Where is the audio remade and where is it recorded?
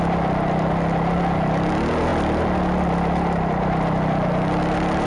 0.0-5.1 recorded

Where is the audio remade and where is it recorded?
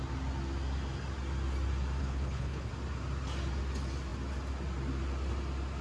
0.0-2.0 recorded; 2.0-2.7 remade; 2.7-5.8 recorded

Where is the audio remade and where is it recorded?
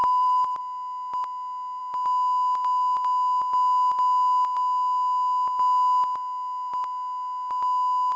0.0-0.6 remade; 0.6-8.2 recorded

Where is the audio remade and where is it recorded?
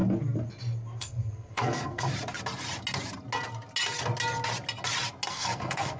0.0-1.0 recorded; 1.0-2.1 remade; 2.1-5.3 recorded; 5.3-6.0 remade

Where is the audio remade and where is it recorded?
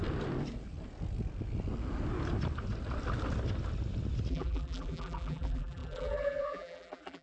0.0-4.3 recorded; 4.3-7.2 remade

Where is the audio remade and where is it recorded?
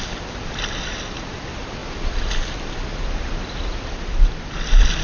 0.0-5.0 recorded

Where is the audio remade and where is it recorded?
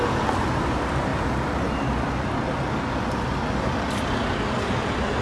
0.0-5.2 recorded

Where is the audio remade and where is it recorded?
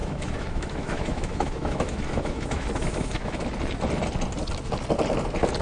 0.0-3.4 remade; 3.4-5.6 recorded